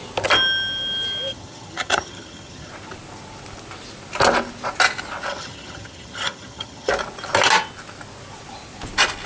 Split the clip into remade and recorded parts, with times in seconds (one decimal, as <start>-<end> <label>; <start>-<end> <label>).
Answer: 0.0-1.3 recorded; 1.3-2.7 remade; 2.7-5.3 recorded; 5.3-6.9 remade; 6.9-9.3 recorded